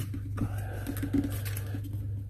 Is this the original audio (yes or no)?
yes